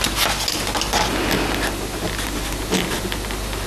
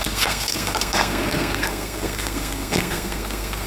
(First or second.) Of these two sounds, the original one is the first